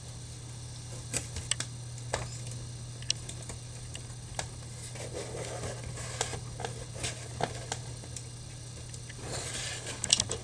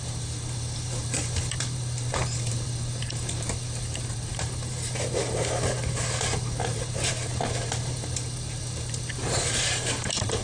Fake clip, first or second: second